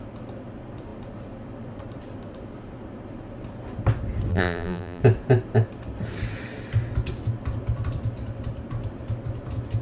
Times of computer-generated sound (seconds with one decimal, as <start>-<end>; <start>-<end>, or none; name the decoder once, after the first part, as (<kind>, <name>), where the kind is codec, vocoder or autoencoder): 4.3-5.0 (vocoder, BigVGAN v2)

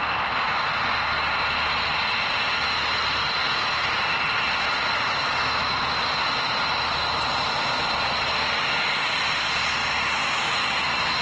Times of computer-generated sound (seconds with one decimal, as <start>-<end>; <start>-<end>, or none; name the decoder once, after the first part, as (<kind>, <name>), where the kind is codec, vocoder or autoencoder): none